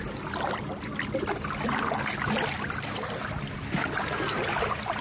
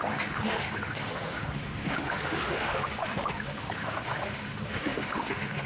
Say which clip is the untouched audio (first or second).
first